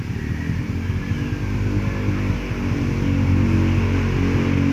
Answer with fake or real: real